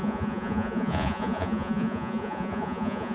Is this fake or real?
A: fake